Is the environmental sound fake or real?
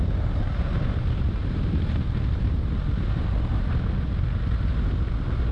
fake